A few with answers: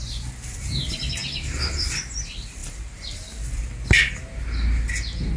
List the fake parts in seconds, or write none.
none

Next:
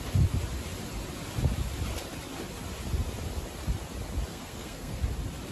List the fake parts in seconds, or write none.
4.3-5.0 (codec, SNAC)

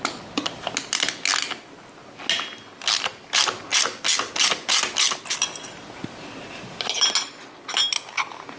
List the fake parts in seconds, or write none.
none